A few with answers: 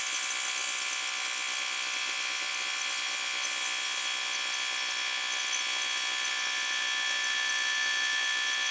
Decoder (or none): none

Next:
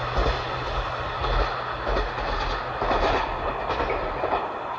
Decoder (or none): none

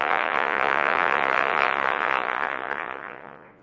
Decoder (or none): vocoder, Vocos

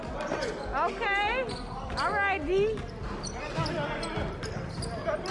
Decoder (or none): none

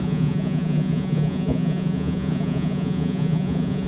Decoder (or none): vocoder, Vocos